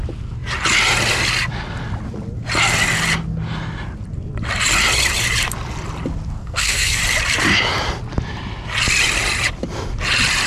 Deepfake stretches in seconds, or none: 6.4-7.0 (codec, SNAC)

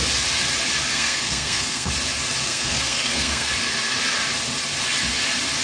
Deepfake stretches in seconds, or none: 0.9-1.9 (codec, SNAC); 2.4-3.5